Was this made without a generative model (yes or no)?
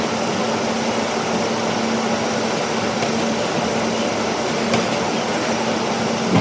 yes